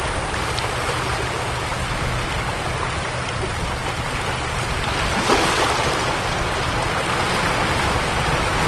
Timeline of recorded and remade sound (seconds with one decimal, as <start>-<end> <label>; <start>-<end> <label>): 0.0-8.7 recorded